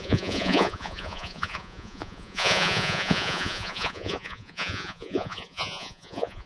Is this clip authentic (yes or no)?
no